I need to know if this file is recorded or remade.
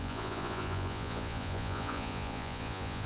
remade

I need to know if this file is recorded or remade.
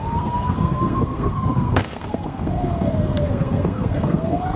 remade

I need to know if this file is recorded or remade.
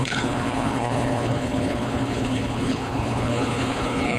remade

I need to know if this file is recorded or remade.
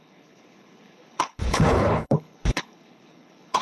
remade